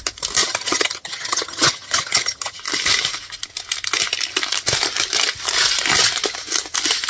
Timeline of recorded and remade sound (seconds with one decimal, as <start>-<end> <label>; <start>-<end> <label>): 0.0-0.4 recorded; 0.4-2.6 remade; 2.6-7.1 recorded